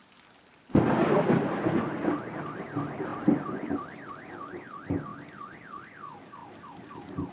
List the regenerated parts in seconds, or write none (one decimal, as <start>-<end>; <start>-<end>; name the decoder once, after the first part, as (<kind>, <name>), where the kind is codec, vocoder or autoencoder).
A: 3.1-4.1 (vocoder, BigVGAN v2); 6.4-7.3